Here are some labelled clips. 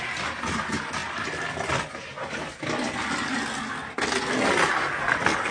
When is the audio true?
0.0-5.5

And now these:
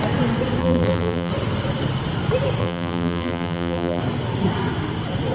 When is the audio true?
0.0-0.6; 1.3-2.6; 4.0-5.3